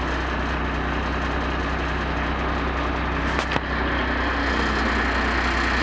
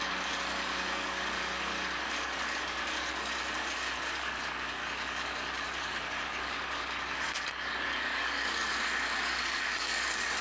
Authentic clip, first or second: first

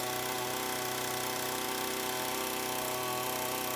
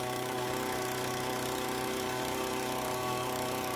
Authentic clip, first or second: first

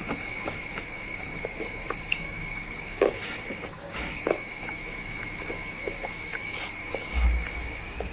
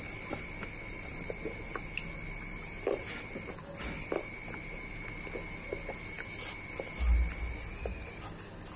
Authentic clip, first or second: second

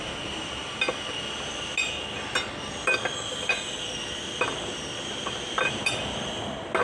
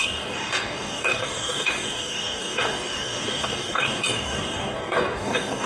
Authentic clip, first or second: first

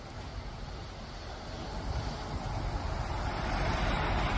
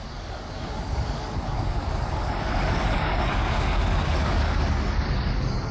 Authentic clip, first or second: first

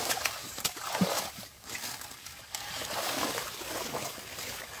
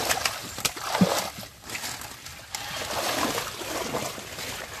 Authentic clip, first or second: second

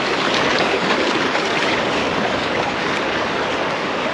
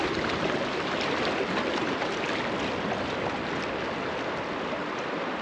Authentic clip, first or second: second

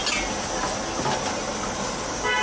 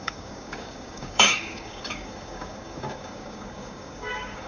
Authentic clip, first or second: first